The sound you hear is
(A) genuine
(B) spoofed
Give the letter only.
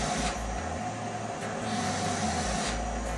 A